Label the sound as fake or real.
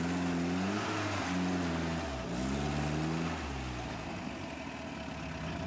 real